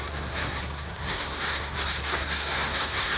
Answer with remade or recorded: remade